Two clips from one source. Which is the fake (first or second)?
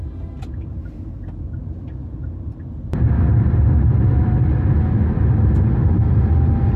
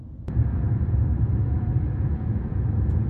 second